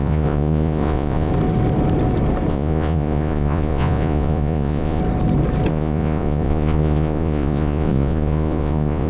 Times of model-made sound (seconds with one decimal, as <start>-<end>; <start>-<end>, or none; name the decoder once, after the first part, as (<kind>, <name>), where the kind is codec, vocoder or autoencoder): 0.0-1.3 (vocoder, Vocos); 2.5-5.0; 5.7-9.1